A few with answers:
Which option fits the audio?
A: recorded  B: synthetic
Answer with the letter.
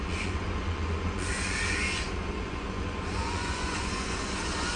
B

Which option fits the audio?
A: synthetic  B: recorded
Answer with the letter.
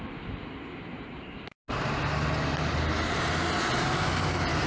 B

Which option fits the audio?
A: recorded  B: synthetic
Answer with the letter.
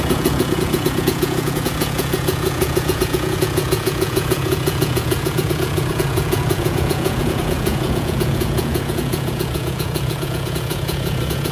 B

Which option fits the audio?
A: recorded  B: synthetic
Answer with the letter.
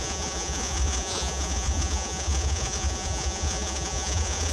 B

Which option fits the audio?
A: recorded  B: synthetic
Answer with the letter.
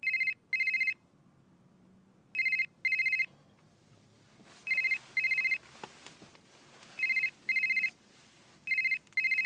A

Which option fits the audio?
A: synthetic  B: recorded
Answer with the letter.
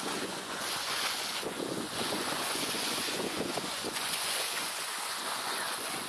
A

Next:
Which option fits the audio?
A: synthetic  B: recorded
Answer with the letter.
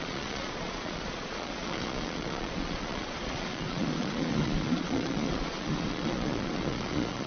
A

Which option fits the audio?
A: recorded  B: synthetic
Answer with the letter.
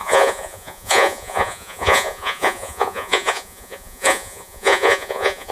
B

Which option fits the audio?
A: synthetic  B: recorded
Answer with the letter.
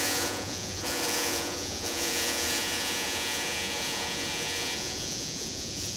A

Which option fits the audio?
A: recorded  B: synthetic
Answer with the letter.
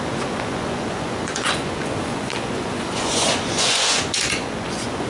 B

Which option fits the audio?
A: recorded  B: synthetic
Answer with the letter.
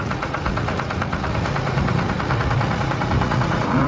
B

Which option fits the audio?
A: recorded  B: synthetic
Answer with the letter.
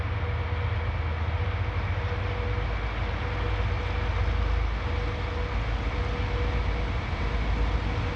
A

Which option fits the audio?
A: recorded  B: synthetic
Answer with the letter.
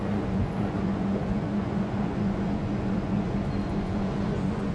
B